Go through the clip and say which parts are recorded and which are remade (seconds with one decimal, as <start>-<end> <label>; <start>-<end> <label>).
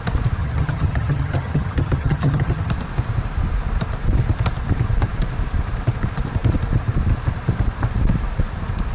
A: 0.0-0.4 recorded; 0.4-2.7 remade; 2.7-8.9 recorded